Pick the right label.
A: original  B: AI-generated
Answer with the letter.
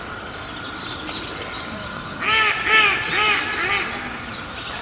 A